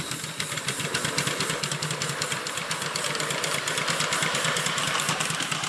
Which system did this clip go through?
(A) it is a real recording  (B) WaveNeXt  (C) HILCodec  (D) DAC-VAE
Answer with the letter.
A